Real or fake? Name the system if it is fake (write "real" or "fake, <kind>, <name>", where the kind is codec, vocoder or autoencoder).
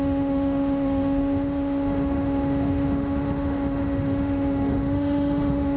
fake, autoencoder, DAC-VAE